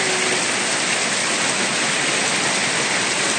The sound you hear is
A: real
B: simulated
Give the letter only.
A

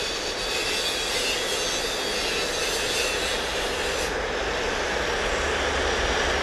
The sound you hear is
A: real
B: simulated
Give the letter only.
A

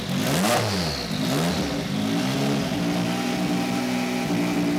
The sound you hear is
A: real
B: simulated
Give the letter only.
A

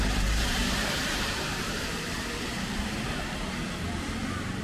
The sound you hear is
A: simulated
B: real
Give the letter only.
A